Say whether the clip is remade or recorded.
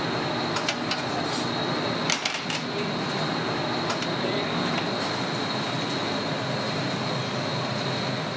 recorded